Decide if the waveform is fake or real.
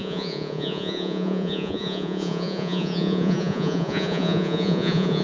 fake